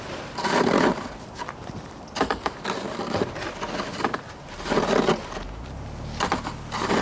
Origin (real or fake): real